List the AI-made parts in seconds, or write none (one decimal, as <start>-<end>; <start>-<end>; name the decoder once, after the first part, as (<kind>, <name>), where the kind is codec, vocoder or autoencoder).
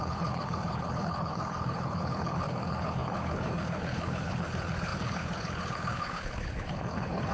0.0-7.3 (codec, HILCodec)